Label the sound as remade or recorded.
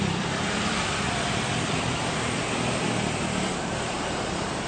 remade